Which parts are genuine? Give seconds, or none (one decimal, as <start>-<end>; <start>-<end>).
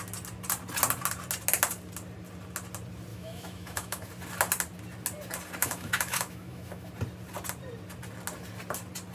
0.0-3.1; 4.1-5.6; 6.9-9.1